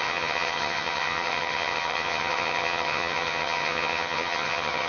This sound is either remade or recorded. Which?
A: remade